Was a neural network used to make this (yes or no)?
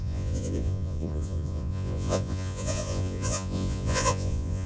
yes